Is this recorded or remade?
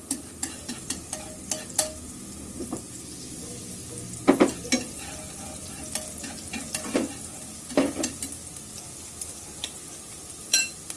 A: recorded